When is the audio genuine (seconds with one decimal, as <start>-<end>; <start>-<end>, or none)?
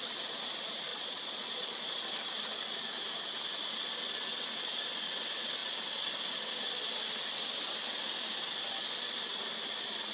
0.0-0.9; 1.8-10.1